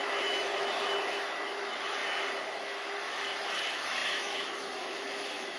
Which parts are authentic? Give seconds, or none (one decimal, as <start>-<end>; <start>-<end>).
2.0-2.6